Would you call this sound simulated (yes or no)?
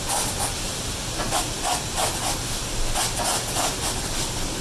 no